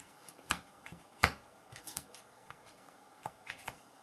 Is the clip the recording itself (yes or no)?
no